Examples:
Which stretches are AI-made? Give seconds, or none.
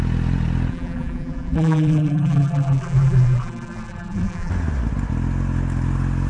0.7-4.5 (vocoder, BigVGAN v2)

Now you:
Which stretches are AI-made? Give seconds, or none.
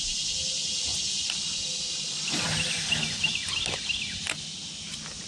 none